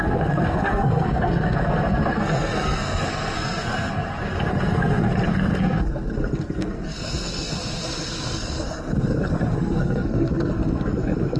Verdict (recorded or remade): remade